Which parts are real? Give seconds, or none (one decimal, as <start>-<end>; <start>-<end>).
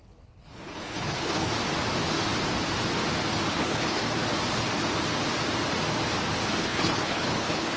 1.5-3.5; 4.0-6.6